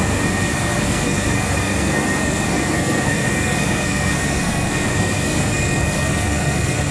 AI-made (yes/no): yes